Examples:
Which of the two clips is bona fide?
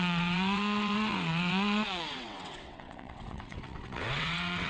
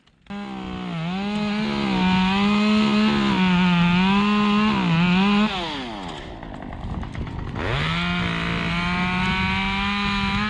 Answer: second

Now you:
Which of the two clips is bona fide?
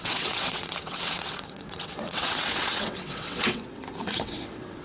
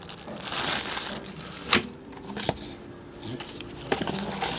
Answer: second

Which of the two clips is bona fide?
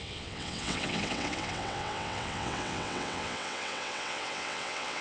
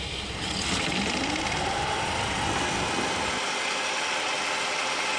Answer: second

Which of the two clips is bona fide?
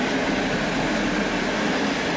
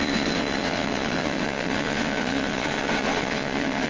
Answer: first